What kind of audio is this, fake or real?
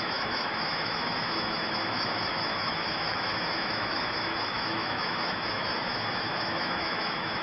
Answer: fake